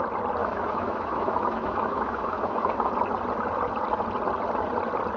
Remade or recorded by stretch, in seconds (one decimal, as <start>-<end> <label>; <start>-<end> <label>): 0.0-0.4 recorded; 0.4-2.9 remade; 2.9-5.2 recorded